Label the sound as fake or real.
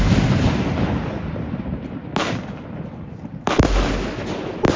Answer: real